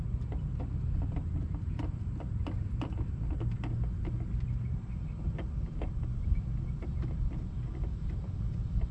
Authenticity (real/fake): fake